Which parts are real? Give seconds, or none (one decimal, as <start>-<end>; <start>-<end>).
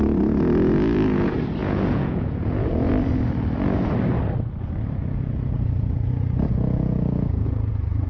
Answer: 0.0-1.6; 2.9-5.0